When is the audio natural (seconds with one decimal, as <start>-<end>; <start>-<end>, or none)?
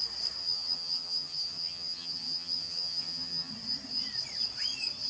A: 0.0-0.4; 3.5-5.1